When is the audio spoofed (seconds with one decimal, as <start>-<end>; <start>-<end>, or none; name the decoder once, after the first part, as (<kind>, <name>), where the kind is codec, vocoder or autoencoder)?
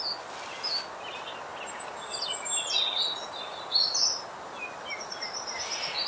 none